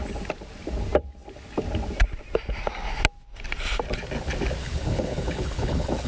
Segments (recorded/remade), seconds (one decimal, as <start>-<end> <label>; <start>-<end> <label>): 0.0-4.6 recorded; 4.6-6.1 remade